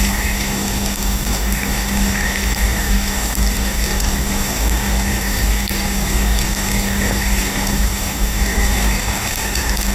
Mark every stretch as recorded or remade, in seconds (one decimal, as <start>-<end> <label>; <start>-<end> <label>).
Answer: 0.0-9.9 remade